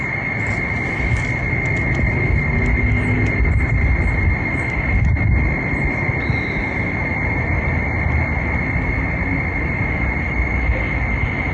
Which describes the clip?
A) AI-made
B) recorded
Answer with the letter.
B